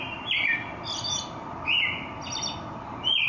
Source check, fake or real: real